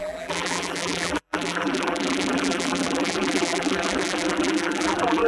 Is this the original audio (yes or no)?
no